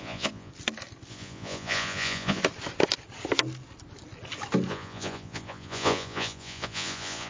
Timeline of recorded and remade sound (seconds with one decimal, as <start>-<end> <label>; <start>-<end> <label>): 0.0-0.5 remade; 0.5-1.1 recorded; 1.1-2.4 remade; 2.4-4.7 recorded; 4.7-7.3 remade